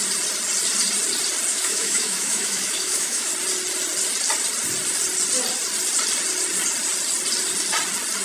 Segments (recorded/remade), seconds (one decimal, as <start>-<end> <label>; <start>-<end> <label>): 0.0-1.5 recorded; 1.5-3.3 remade; 3.3-8.2 recorded